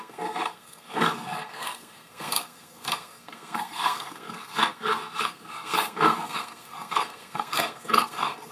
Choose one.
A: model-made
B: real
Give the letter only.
A